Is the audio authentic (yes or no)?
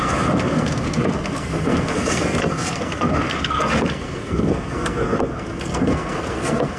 no